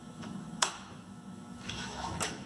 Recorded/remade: remade